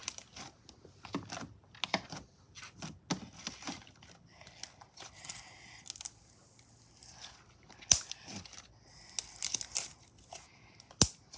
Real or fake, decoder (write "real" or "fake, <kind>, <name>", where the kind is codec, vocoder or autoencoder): real